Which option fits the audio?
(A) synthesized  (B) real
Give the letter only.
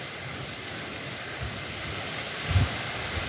B